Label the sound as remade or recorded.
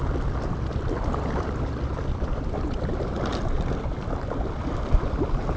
recorded